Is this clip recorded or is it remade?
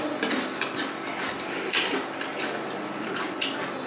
recorded